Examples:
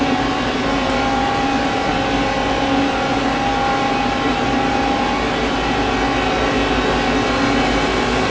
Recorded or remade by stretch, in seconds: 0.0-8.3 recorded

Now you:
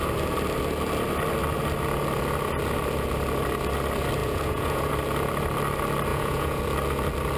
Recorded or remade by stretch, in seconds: 0.0-4.2 recorded; 4.2-4.9 remade; 4.9-6.1 recorded; 6.1-6.6 remade; 6.6-7.4 recorded

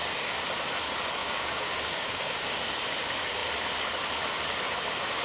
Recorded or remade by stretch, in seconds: 0.0-1.2 recorded; 1.2-2.6 remade; 2.6-5.2 recorded

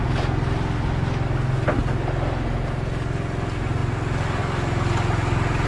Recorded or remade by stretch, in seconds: 0.0-5.7 recorded